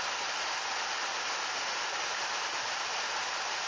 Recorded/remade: recorded